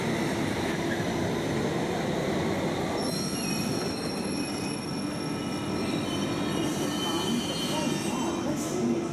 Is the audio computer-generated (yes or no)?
no